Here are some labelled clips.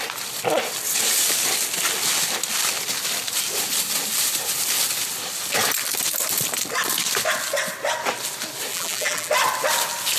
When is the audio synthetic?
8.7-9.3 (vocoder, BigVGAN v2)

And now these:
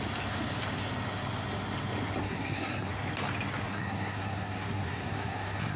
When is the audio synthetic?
2.2-2.9 (codec, SNAC); 3.7-5.8

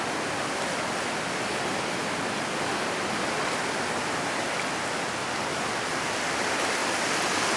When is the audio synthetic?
none

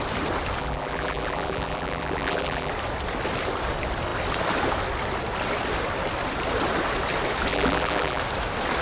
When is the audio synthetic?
0.6-2.7 (vocoder, BigVGAN v2); 7.5-8.2

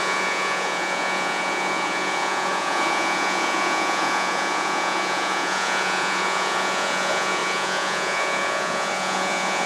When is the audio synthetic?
0.0-9.7 (vocoder, Vocos)

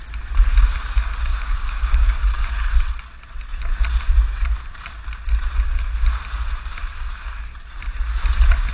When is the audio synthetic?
1.3-2.4 (codec, DAC)

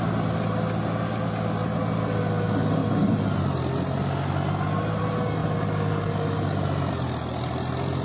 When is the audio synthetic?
none

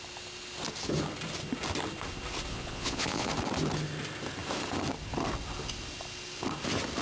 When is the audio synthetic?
2.5-3.3 (vocoder, Vocos)